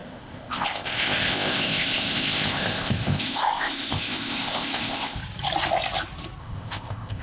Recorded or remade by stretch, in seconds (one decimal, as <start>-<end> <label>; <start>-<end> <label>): 0.0-5.2 remade; 5.2-6.4 recorded; 6.4-7.2 remade